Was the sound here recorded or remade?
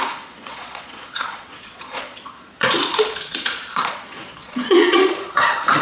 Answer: remade